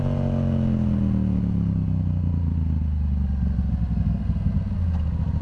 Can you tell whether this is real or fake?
real